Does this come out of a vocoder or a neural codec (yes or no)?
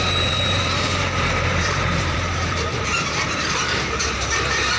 yes